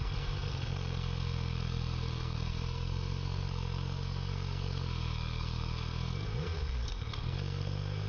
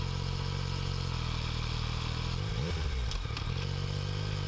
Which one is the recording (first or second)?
second